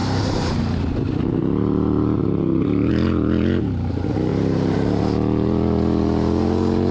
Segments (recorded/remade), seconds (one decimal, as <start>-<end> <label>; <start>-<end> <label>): 0.0-0.6 remade; 0.6-1.4 recorded; 1.4-2.9 remade; 2.9-4.3 recorded; 4.3-5.0 remade; 5.0-6.9 recorded